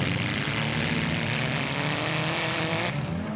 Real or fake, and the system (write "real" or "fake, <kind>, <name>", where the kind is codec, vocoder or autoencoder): fake, vocoder, BigVGAN v2